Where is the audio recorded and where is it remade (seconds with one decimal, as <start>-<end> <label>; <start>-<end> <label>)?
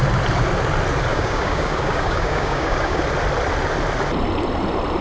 0.0-1.1 recorded; 1.1-3.0 remade; 3.0-5.0 recorded